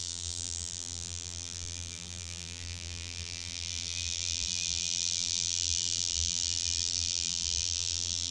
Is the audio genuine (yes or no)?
no